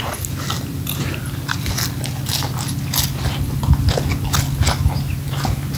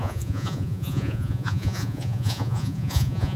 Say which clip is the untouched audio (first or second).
first